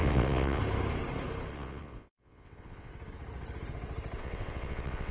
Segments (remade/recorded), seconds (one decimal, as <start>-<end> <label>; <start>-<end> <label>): 0.0-0.6 remade; 0.6-1.5 recorded; 1.5-2.9 remade; 2.9-4.2 recorded; 4.2-5.1 remade